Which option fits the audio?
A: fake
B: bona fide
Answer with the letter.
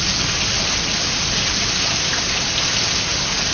B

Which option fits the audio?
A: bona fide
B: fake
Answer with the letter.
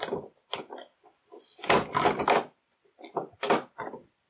A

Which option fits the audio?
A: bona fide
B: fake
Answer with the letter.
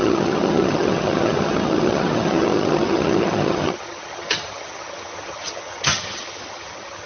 B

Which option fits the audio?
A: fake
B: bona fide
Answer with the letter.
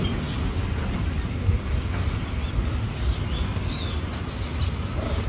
B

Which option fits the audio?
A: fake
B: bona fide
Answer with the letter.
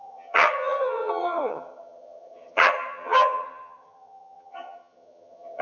A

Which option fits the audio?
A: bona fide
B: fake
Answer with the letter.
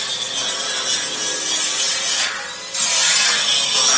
A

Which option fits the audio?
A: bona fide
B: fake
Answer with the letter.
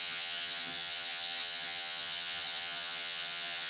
B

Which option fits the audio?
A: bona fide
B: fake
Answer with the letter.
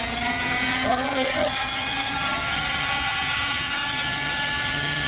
B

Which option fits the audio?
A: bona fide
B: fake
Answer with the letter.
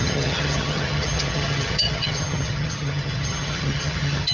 B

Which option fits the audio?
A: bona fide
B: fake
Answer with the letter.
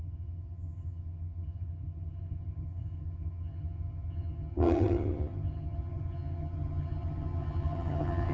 B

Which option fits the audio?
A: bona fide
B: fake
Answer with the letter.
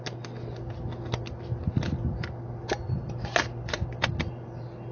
A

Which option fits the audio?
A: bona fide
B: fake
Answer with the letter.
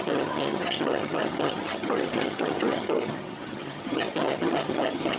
B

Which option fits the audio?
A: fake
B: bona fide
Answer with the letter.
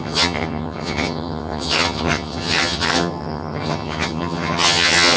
A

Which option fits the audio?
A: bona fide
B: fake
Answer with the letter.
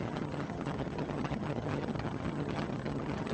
B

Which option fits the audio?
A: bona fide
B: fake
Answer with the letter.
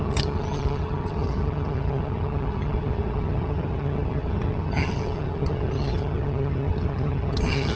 B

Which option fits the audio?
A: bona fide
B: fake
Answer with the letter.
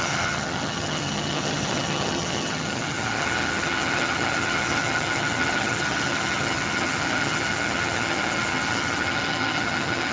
B